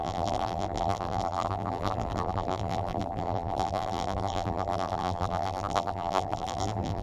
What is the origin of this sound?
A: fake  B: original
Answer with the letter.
A